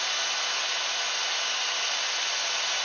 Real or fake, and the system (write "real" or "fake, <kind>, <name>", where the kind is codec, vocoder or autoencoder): real